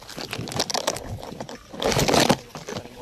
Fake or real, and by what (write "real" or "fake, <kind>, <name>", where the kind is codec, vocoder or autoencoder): real